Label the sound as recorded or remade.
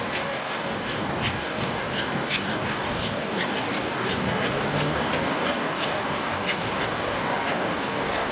remade